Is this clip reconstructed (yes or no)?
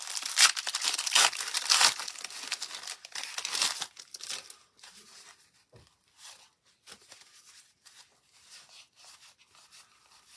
no